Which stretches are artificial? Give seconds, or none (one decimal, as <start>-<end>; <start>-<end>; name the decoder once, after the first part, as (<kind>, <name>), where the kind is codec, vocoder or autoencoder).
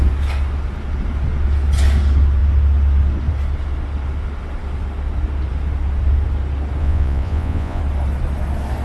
6.8-7.8 (vocoder, Vocos)